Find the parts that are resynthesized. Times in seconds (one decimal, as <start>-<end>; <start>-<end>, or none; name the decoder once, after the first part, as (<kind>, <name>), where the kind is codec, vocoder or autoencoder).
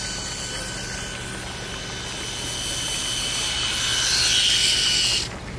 none